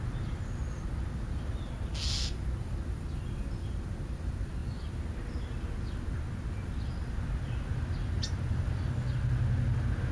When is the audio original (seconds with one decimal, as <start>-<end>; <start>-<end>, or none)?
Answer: 0.0-10.1